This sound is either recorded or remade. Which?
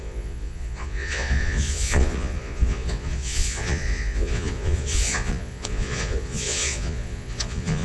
remade